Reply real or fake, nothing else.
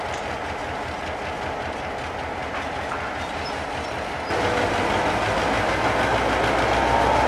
real